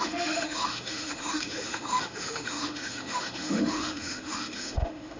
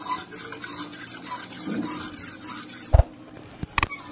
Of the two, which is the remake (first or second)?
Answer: first